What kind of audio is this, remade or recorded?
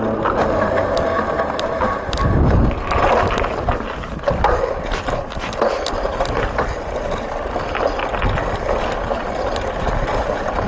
recorded